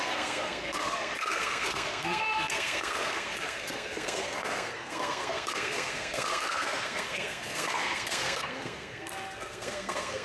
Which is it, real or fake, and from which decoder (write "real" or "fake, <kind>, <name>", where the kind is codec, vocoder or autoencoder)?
fake, codec, SNAC